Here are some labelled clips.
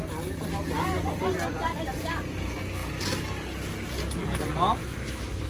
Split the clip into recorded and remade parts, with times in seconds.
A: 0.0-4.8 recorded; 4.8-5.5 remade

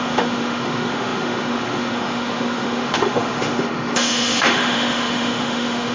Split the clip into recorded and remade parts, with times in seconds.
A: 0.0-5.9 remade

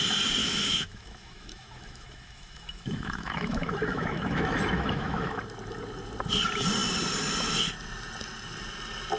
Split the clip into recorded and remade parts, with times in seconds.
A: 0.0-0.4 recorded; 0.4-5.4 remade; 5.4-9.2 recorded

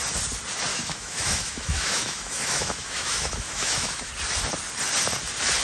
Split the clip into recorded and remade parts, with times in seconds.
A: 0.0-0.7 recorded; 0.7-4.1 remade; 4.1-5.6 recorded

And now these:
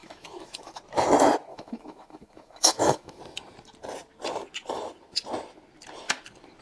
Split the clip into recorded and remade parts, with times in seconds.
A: 0.0-0.8 remade; 0.8-1.5 recorded; 1.5-3.2 remade; 3.2-6.6 recorded

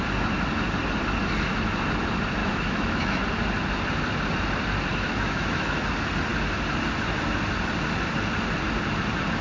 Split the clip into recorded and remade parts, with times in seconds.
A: 0.0-2.4 recorded; 2.4-3.2 remade; 3.2-4.9 recorded; 4.9-5.8 remade; 5.8-9.4 recorded

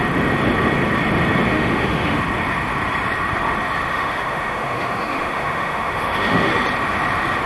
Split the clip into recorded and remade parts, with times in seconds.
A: 0.0-1.5 recorded; 1.5-2.2 remade; 2.2-3.9 recorded; 3.9-6.5 remade; 6.5-7.5 recorded

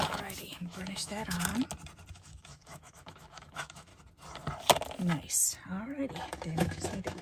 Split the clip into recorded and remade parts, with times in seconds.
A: 0.0-1.5 remade; 1.5-2.1 recorded; 2.1-3.9 remade; 3.9-6.3 recorded; 6.3-7.2 remade